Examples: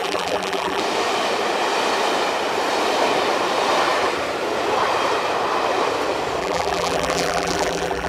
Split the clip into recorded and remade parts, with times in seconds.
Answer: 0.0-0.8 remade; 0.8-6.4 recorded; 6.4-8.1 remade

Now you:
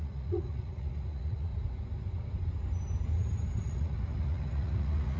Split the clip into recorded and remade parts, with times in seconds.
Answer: 0.0-1.5 remade; 1.5-3.6 recorded; 3.6-5.2 remade

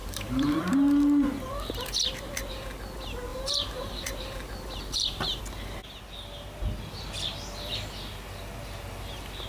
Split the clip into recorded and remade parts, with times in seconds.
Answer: 0.0-0.6 remade; 0.6-3.3 recorded; 3.3-5.4 remade; 5.4-9.5 recorded

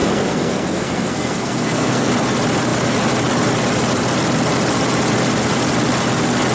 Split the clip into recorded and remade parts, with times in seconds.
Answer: 0.0-2.1 remade; 2.1-6.5 recorded

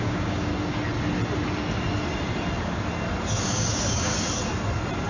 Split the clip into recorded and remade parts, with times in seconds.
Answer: 0.0-0.5 remade; 0.5-3.4 recorded; 3.4-4.1 remade; 4.1-5.1 recorded

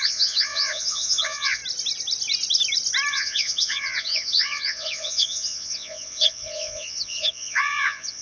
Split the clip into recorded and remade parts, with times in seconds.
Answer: 0.0-1.6 remade; 1.6-3.1 recorded; 3.1-8.2 remade